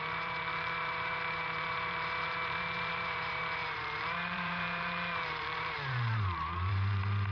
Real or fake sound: fake